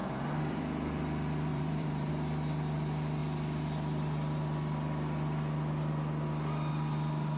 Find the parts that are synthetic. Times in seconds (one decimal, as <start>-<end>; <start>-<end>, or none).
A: 0.0-0.6; 1.5-2.1